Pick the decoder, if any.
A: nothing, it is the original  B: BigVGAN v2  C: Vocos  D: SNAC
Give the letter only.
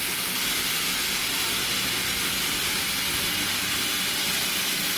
A